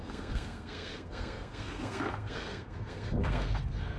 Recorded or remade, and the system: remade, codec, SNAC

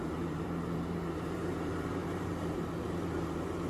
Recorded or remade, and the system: remade, vocoder, BigVGAN v2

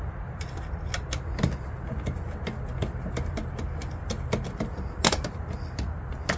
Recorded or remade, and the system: recorded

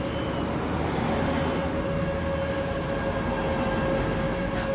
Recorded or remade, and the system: recorded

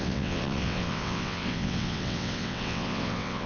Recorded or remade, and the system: remade, vocoder, WaveNeXt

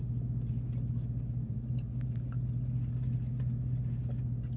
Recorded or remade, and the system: recorded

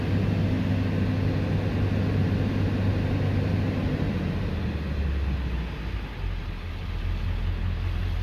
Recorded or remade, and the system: recorded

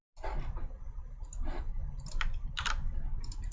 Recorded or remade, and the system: recorded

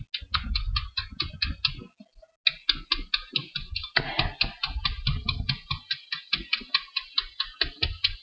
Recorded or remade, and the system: recorded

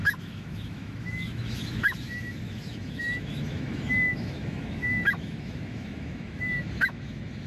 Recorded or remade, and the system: remade, autoencoder, DAC-VAE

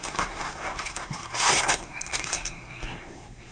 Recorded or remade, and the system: remade, codec, SNAC